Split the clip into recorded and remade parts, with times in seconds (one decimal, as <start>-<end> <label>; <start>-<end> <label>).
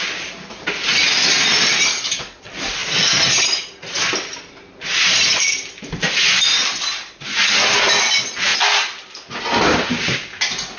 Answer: 0.0-1.9 recorded; 1.9-2.4 remade; 2.4-10.8 recorded